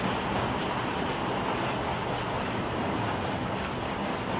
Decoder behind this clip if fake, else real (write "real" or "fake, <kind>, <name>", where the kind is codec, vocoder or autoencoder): real